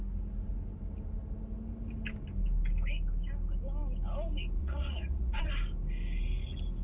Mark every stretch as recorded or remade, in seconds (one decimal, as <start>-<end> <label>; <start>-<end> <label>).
0.0-4.6 recorded; 4.6-5.5 remade; 5.5-6.8 recorded